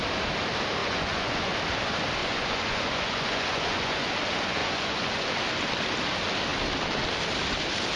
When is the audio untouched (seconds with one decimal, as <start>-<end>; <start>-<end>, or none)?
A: 0.0-0.8; 1.5-2.2; 4.1-4.6; 5.3-8.0